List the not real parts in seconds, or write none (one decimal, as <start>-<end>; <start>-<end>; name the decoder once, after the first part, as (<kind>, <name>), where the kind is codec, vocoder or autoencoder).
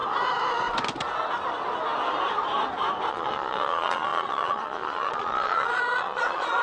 3.1-6.6 (vocoder, Vocos)